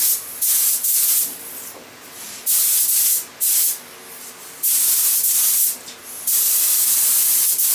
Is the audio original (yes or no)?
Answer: yes